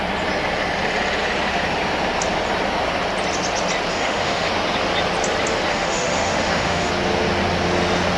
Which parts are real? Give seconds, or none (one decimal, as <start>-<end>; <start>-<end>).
0.0-3.9; 4.5-5.7; 6.9-8.2